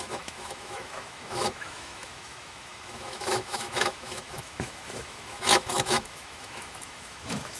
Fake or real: fake